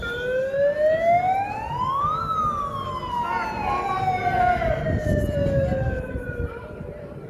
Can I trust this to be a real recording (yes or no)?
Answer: yes